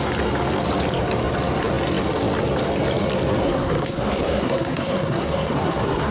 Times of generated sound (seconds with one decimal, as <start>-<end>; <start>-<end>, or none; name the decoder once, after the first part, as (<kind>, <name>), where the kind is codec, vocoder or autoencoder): 3.4-6.1 (codec, SNAC)